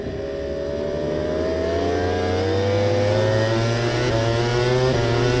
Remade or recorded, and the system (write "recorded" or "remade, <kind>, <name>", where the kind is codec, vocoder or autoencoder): recorded